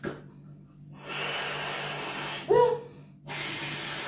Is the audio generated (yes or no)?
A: no